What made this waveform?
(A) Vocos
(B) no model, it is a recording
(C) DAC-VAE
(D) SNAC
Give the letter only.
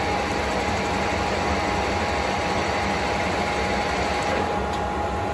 B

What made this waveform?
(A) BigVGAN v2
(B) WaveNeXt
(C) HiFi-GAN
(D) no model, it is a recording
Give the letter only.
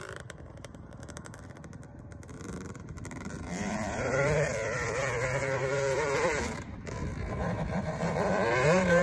A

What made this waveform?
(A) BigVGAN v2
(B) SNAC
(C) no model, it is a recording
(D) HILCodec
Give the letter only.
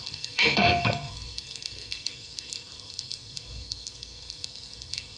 B